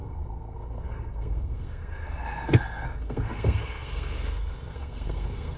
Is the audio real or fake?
fake